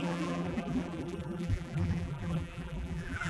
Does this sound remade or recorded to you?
remade